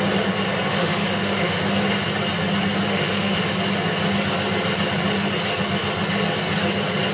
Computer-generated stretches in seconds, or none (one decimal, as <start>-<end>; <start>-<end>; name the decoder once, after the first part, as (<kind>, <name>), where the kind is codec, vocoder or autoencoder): 0.7-1.6 (autoencoder, DAC-VAE); 2.9-3.5